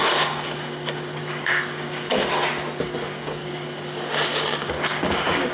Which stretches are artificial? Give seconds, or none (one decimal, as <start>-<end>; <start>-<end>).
0.0-2.1; 2.8-5.5